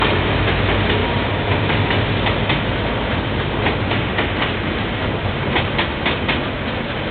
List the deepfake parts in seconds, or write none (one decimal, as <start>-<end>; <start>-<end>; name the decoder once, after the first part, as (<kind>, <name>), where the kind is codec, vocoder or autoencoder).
3.8-4.5 (autoencoder, DAC-VAE)